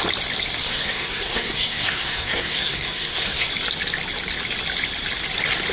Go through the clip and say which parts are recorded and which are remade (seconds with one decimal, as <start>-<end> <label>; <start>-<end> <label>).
0.0-0.6 recorded; 0.6-3.5 remade; 3.5-5.7 recorded